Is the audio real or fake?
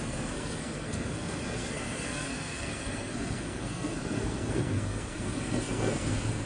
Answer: fake